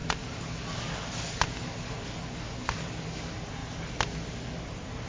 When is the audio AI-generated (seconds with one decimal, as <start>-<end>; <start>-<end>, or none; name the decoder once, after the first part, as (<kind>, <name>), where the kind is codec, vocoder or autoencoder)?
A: none